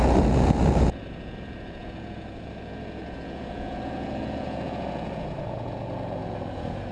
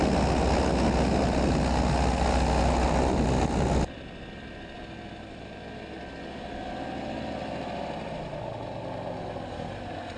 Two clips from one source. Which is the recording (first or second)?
second